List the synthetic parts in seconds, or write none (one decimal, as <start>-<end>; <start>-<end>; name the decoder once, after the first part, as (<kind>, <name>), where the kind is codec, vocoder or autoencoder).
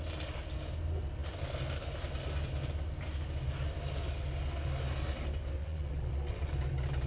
5.6-6.5 (vocoder, WaveNeXt)